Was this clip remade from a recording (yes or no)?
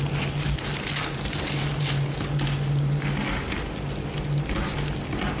yes